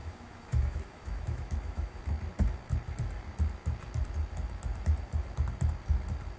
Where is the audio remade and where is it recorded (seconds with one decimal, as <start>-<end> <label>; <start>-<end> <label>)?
0.0-2.0 remade; 2.0-6.4 recorded